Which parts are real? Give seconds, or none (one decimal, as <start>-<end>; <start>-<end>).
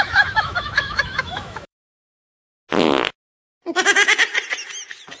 1.8-5.2